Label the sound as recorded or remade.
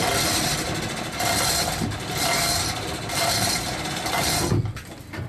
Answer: recorded